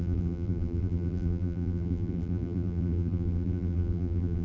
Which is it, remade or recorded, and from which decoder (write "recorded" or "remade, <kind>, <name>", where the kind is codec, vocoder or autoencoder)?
remade, vocoder, BigVGAN v2